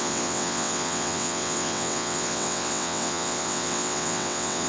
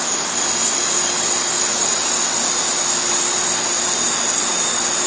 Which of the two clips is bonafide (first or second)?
second